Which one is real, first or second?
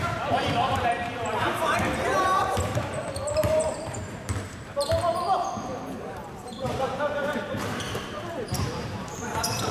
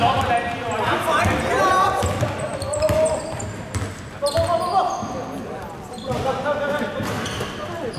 second